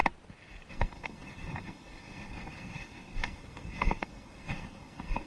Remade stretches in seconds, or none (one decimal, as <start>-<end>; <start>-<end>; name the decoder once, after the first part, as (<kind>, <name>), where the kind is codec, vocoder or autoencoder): 0.7-5.3 (codec, SNAC)